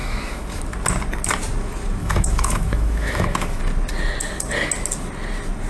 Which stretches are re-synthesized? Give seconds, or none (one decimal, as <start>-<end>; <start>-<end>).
0.0-0.6; 2.0-3.6